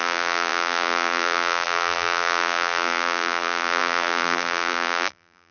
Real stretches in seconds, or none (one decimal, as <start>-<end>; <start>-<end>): none